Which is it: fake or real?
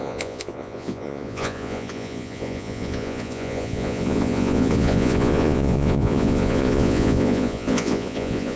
fake